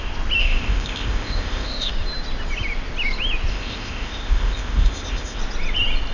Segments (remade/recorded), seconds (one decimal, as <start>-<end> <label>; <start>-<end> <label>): 0.0-0.4 recorded; 0.4-1.9 remade; 1.9-3.5 recorded; 3.5-5.4 remade; 5.4-6.1 recorded